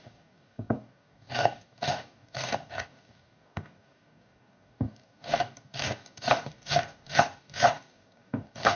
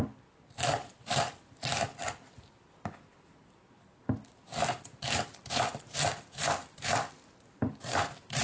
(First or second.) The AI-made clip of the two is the first